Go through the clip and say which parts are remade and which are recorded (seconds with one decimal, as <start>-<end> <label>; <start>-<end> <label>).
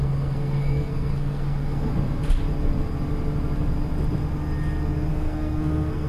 0.0-1.9 remade; 1.9-5.1 recorded; 5.1-6.1 remade